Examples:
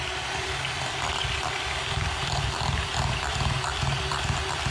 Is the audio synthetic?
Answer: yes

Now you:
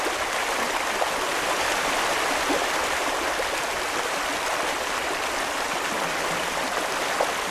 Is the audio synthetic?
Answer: no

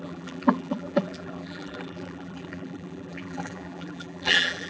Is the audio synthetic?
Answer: yes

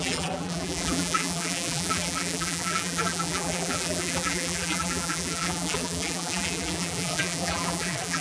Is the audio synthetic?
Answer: yes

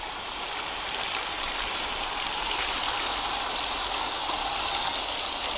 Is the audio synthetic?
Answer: no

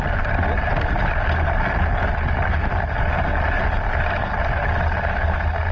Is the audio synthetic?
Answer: no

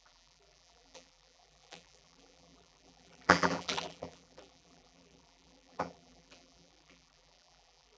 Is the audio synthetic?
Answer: yes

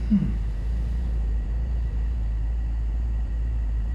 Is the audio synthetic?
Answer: yes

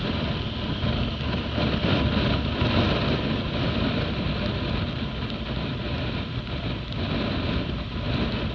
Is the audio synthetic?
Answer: no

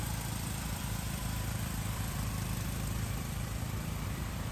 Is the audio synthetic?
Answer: yes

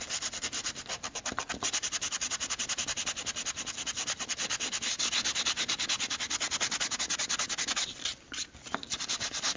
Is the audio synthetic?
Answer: no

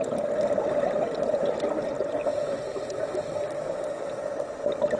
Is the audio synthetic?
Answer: no